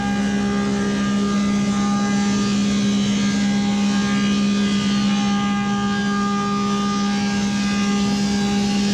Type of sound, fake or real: real